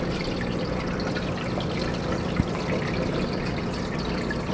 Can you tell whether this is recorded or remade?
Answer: recorded